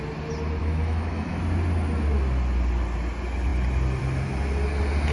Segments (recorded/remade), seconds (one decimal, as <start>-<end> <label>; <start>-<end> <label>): 0.0-0.6 recorded; 0.6-1.4 remade; 1.4-5.1 recorded